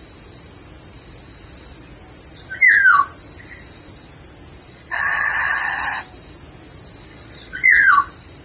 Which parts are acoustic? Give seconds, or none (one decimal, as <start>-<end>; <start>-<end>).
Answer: 0.0-4.7; 5.8-7.1; 7.9-8.4

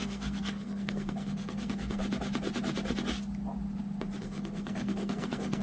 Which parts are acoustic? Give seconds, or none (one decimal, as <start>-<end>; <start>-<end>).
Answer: 2.0-4.2

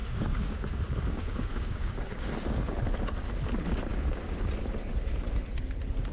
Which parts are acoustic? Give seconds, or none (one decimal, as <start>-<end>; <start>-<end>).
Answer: 2.3-3.9; 4.4-6.1

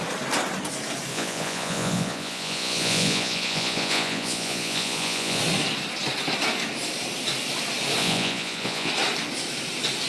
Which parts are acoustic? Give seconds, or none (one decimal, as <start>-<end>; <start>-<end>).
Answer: 0.0-1.1; 5.4-8.0; 8.9-10.1

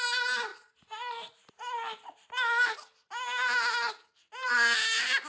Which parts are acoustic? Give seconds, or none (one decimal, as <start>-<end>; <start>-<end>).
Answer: 0.0-5.3